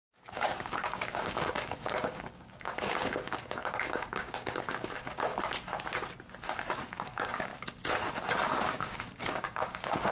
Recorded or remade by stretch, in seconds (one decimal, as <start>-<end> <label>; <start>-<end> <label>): 0.0-5.3 remade; 5.3-6.9 recorded; 6.9-7.5 remade; 7.5-8.6 recorded; 8.6-10.1 remade